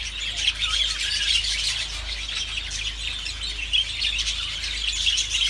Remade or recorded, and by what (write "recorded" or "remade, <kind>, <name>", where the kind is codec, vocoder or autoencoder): recorded